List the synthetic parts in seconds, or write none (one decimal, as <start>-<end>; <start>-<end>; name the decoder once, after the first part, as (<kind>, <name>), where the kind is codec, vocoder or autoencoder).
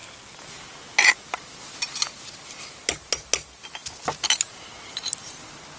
none